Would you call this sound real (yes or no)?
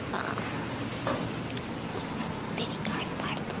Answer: yes